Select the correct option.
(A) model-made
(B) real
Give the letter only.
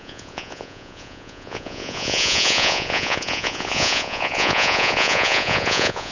A